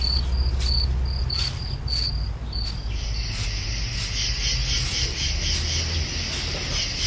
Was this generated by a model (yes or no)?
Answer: no